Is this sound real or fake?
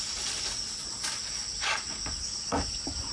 real